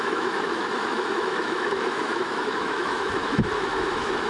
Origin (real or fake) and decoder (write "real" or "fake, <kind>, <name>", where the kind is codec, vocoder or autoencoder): fake, autoencoder, DAC-VAE